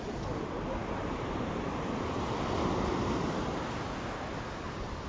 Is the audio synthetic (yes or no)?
no